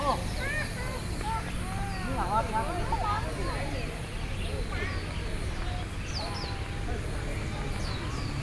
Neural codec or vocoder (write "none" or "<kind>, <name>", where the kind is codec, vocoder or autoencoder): none